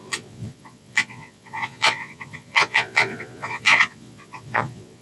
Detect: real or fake fake